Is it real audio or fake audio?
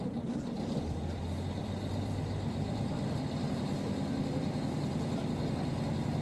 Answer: fake